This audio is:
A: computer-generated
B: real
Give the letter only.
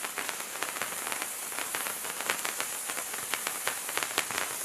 A